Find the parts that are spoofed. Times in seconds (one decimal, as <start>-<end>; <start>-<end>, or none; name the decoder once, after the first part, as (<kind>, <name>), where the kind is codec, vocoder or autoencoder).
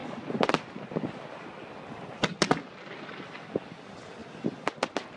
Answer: none